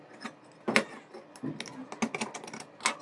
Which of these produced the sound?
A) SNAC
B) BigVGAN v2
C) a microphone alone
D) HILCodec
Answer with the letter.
C